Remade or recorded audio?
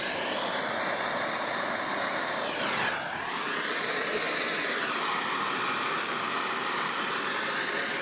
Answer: remade